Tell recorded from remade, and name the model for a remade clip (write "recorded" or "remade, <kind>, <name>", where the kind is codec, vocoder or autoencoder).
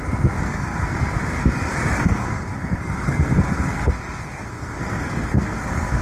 remade, codec, SNAC